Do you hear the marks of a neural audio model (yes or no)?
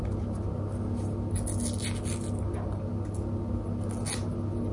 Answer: no